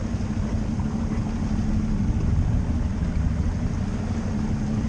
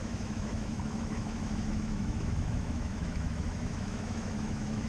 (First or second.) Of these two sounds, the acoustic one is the first